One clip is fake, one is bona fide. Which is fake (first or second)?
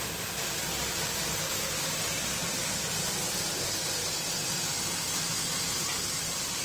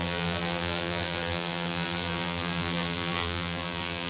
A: second